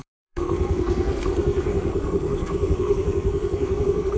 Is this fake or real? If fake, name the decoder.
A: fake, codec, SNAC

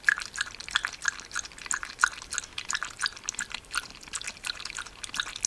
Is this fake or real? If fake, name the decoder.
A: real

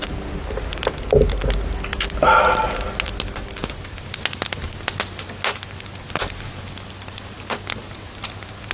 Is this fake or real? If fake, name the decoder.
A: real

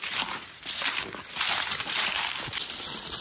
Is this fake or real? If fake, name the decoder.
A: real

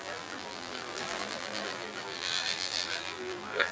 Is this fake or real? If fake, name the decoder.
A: fake, vocoder, BigVGAN v2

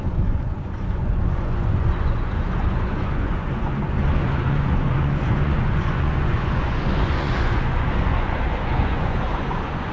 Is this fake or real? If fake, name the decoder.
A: fake, vocoder, Vocos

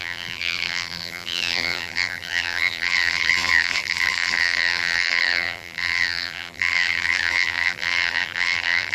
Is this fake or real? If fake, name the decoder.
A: fake, vocoder, BigVGAN v2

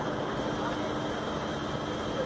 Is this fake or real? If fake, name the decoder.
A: real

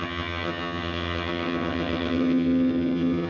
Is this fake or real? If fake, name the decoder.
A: fake, vocoder, HiFi-GAN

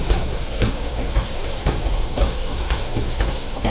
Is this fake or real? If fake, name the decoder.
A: fake, codec, SNAC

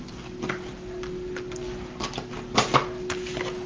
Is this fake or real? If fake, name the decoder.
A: real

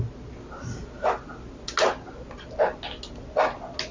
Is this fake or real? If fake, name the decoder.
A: real